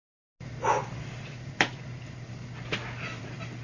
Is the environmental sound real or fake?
real